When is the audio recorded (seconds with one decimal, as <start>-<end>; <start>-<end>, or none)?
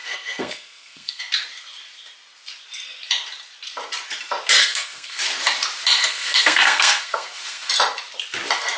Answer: 1.2-4.6; 5.2-6.0; 7.7-8.8